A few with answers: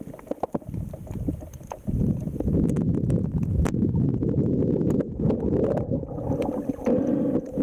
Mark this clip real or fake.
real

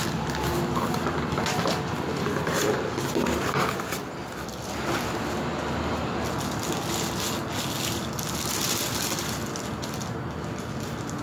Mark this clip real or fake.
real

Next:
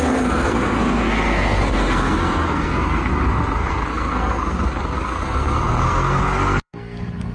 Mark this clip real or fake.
fake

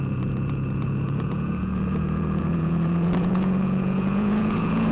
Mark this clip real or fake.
fake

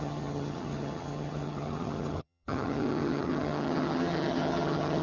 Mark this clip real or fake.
fake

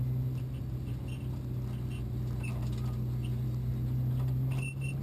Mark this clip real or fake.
real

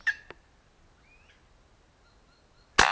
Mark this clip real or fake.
real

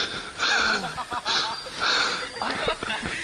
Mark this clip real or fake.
real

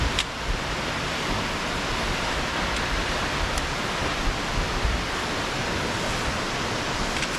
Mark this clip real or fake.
real